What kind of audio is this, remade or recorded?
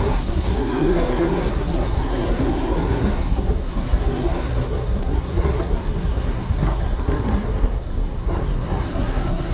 remade